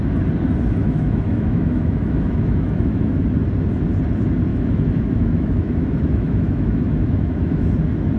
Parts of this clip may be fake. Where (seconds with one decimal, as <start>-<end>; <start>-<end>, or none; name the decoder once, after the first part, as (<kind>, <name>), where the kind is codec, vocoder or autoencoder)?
0.8-3.2 (autoencoder, DAC-VAE); 4.5-7.7